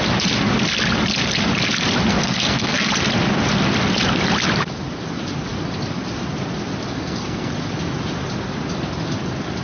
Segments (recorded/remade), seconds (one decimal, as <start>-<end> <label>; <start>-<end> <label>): 0.0-2.1 recorded; 2.1-2.9 remade; 2.9-6.9 recorded; 6.9-7.5 remade; 7.5-9.6 recorded